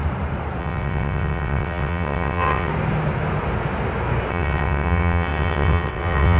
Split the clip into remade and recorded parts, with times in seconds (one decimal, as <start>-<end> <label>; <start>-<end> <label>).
0.0-0.6 recorded; 0.6-2.7 remade; 2.7-4.3 recorded; 4.3-6.4 remade